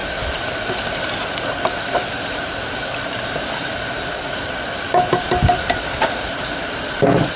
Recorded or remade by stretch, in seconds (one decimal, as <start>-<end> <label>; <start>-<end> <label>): 0.0-7.4 recorded